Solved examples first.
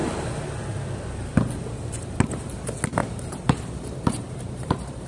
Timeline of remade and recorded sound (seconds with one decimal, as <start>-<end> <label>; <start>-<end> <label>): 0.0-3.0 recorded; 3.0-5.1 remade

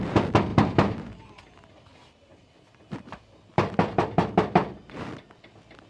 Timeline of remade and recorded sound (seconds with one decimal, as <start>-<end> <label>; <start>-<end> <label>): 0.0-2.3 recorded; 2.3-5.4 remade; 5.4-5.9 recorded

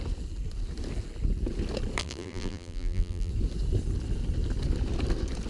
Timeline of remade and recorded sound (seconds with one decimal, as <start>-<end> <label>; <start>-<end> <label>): 0.0-2.0 recorded; 2.0-3.3 remade; 3.3-5.5 recorded

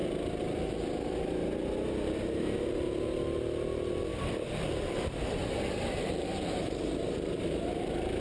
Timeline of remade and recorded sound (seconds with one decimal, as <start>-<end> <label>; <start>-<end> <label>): 0.0-4.1 recorded; 4.1-8.2 remade